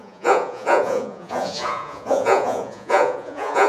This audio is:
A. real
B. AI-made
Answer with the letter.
B